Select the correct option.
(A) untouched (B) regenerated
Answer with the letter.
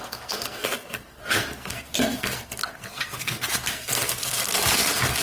B